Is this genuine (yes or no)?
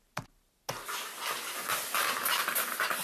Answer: yes